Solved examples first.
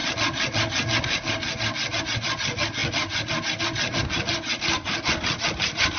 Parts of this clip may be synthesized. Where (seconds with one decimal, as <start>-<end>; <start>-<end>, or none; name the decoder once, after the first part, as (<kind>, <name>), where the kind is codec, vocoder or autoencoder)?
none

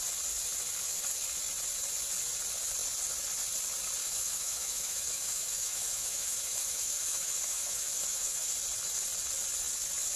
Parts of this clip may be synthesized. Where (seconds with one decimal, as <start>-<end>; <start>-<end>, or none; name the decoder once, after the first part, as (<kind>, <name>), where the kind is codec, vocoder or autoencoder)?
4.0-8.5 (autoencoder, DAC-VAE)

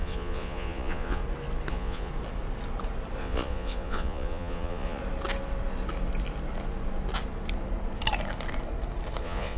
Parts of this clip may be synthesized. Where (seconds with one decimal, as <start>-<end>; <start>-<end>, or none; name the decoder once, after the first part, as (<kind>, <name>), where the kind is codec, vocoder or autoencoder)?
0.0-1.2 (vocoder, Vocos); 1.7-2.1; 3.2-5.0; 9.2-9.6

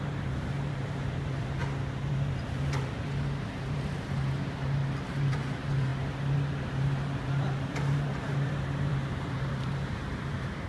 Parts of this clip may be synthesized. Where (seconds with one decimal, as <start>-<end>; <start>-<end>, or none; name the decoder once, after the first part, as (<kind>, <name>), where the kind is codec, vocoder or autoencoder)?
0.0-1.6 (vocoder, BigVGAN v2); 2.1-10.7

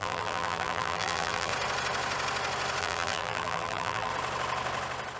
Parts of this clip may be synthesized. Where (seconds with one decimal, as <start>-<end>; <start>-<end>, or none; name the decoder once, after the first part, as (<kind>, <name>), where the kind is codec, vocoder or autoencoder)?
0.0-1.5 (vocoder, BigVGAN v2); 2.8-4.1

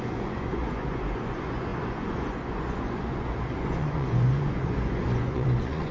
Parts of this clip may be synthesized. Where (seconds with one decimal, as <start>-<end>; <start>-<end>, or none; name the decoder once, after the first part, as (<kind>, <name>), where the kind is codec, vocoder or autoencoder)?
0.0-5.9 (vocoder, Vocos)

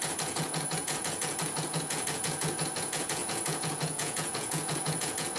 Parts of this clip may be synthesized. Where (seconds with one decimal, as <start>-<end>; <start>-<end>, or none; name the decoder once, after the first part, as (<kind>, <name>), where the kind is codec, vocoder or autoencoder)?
0.0-5.4 (vocoder, Vocos)